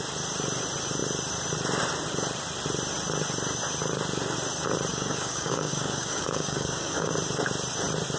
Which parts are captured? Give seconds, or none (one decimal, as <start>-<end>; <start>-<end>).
0.0-4.9; 7.1-8.2